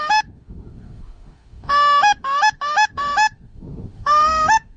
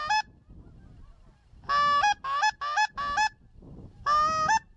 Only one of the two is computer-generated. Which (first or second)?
first